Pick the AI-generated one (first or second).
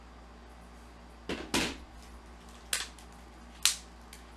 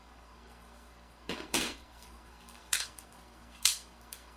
second